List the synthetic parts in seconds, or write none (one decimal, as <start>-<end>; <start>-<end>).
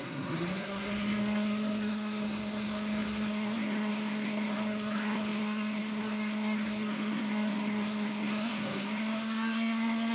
0.0-10.1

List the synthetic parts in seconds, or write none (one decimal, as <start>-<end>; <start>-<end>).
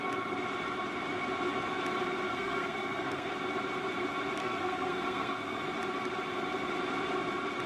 2.3-3.3; 4.4-5.6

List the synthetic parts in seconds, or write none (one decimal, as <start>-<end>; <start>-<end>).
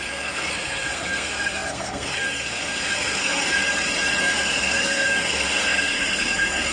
0.0-3.6; 4.2-6.7